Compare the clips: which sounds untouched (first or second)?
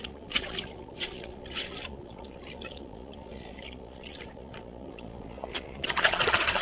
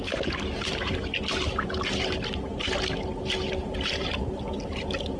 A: second